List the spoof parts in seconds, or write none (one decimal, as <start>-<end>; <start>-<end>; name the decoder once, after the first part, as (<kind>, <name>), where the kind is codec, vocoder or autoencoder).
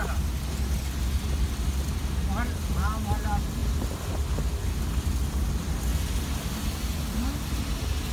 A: none